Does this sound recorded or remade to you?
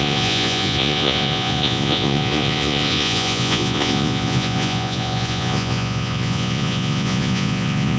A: remade